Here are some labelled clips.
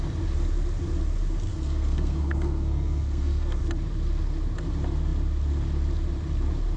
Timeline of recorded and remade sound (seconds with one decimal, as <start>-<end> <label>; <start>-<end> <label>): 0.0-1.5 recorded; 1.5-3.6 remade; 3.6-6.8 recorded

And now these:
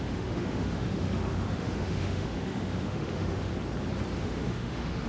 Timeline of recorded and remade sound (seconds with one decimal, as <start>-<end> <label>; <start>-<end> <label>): 0.0-3.5 remade; 3.5-4.2 recorded; 4.2-5.1 remade

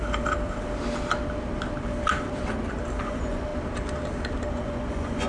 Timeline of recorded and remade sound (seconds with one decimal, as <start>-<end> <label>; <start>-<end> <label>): 0.0-3.0 recorded; 3.0-3.5 remade; 3.5-4.5 recorded; 4.5-5.3 remade

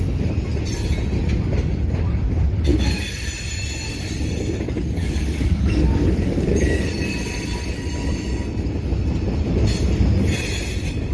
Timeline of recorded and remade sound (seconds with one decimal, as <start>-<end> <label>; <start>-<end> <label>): 0.0-5.0 recorded; 5.0-6.8 remade; 6.8-11.1 recorded

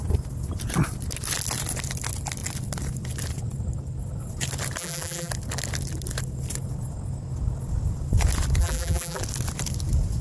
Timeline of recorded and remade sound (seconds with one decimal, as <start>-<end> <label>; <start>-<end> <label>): 0.0-4.8 recorded; 4.8-5.3 remade; 5.3-8.6 recorded; 8.6-9.2 remade; 9.2-10.2 recorded

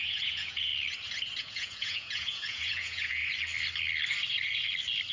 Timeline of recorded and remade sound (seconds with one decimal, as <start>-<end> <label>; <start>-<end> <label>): 0.0-0.7 remade; 0.7-1.4 recorded; 1.4-3.2 remade; 3.2-5.1 recorded

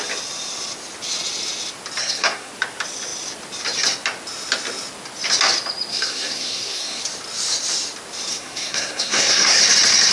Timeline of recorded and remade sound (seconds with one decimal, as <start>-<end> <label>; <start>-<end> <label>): 0.0-2.0 recorded; 2.0-2.5 remade; 2.5-5.9 recorded; 5.9-7.0 remade; 7.0-8.3 recorded; 8.3-9.6 remade; 9.6-10.1 recorded

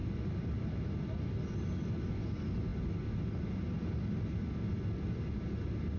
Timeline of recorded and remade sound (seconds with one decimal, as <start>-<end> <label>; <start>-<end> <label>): 0.0-6.0 recorded